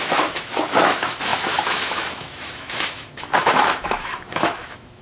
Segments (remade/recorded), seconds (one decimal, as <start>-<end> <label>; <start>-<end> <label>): 0.0-5.0 remade